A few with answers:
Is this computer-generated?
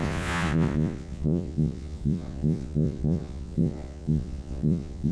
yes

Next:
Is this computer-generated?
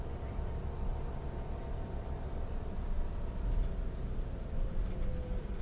no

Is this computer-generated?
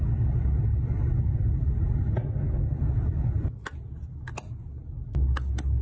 no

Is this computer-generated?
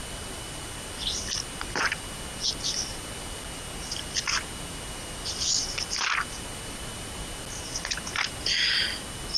no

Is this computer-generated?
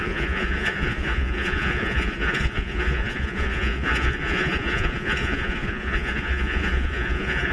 yes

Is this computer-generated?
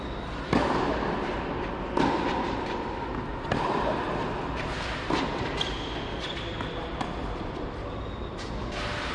no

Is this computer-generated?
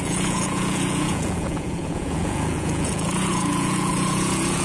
yes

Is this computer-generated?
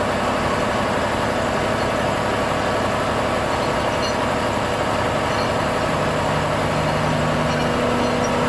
no